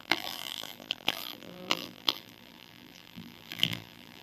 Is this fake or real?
fake